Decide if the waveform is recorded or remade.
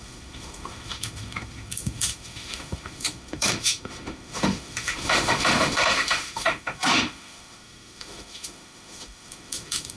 remade